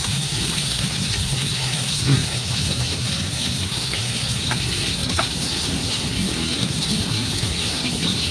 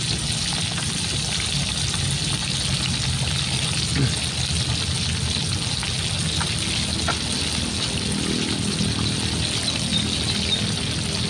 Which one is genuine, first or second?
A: second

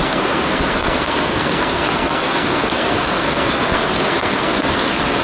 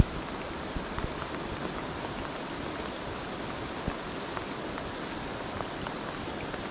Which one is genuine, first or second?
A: second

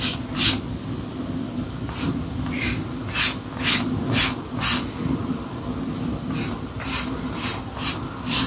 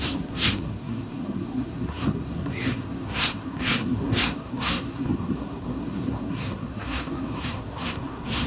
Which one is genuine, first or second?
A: first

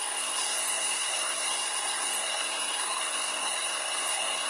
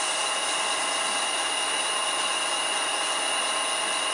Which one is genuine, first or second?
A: second